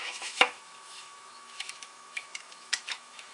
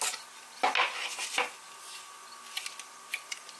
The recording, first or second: second